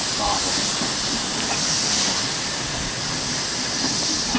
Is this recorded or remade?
recorded